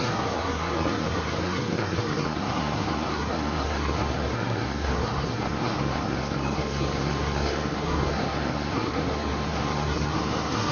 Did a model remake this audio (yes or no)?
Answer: yes